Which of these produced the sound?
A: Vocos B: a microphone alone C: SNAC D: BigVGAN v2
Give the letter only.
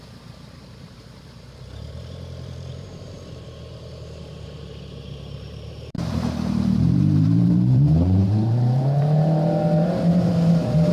D